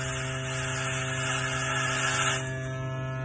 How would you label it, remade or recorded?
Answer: recorded